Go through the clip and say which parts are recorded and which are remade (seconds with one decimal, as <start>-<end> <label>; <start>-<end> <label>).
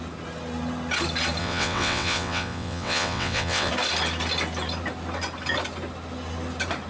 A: 0.0-1.4 recorded; 1.4-3.7 remade; 3.7-6.9 recorded